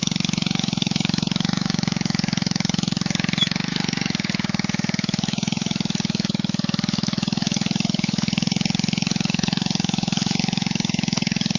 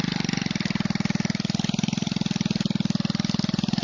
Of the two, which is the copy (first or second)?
first